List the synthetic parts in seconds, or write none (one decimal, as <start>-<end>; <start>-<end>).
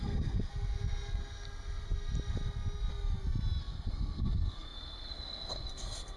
0.0-0.5; 3.6-6.2